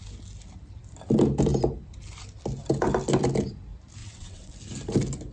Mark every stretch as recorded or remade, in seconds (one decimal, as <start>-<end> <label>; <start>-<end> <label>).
0.0-4.0 recorded; 4.0-4.5 remade; 4.5-5.3 recorded